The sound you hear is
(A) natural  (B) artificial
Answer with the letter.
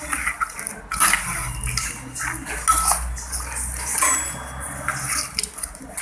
A